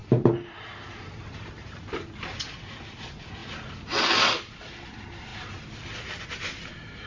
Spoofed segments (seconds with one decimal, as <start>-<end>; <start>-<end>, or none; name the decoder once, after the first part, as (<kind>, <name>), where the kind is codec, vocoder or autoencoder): 0.0-1.8 (vocoder, BigVGAN v2)